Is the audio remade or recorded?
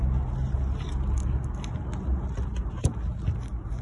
recorded